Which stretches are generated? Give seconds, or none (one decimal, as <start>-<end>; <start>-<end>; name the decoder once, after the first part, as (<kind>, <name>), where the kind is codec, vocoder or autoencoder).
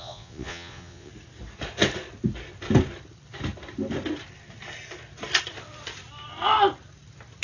0.0-1.1 (vocoder, Vocos)